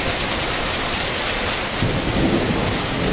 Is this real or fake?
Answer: real